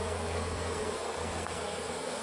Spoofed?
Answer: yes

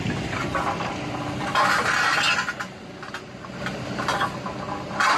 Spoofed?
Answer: no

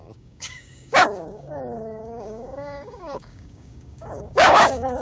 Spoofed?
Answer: yes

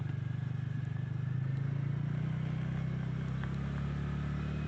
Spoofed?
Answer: no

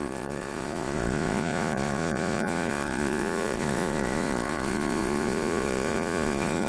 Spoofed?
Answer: yes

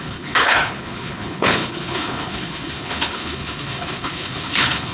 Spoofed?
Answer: yes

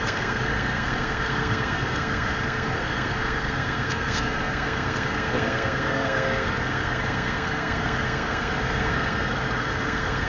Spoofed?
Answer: yes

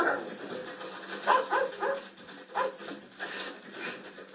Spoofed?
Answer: no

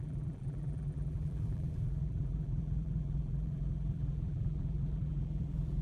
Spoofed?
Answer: yes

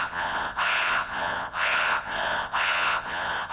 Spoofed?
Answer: yes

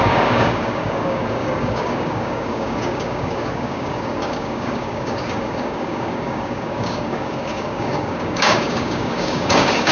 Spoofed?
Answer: yes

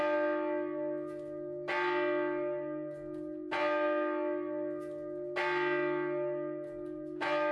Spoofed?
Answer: no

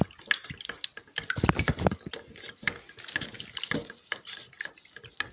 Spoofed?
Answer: no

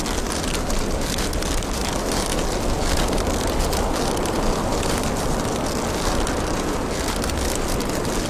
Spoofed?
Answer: no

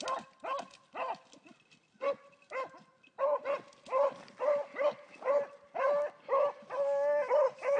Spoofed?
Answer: no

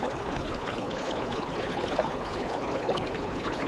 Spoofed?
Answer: yes